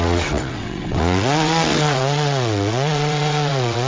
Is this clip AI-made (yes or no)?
yes